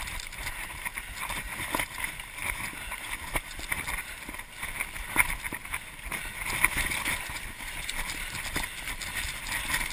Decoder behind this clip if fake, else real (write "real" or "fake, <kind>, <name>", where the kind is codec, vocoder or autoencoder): real